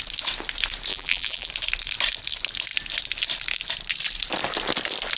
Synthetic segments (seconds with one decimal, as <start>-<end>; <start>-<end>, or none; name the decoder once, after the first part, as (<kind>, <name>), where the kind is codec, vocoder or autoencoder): 0.9-1.5 (vocoder, BigVGAN v2)